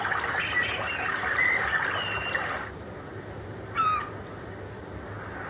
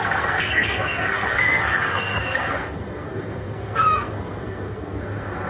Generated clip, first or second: second